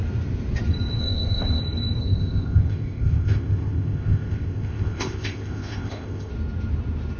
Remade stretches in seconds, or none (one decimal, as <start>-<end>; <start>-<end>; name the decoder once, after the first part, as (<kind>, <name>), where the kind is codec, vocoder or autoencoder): 1.0-1.6 (codec, ZipCodec); 2.0-6.3